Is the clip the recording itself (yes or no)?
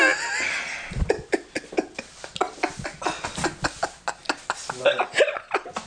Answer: yes